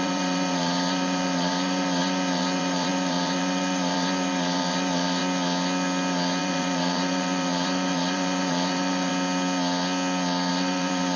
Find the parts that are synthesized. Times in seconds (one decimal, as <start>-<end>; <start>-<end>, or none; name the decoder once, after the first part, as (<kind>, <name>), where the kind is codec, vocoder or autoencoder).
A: 0.0-5.2 (vocoder, BigVGAN v2); 6.4-9.1; 10.5-11.2